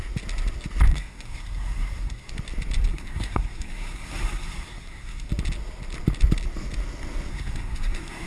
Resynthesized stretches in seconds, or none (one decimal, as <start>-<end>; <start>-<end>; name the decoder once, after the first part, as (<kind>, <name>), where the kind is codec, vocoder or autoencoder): 0.9-2.3 (codec, SNAC); 2.9-5.3; 7.3-8.3

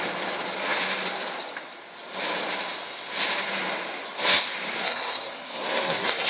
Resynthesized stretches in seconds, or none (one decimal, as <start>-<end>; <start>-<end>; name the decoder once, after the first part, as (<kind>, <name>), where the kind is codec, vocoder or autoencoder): 4.8-6.3 (codec, SNAC)